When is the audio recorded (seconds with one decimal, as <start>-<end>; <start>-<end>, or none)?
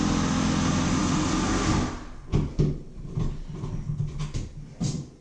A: 0.0-5.2